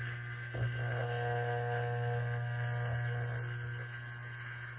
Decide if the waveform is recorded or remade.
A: recorded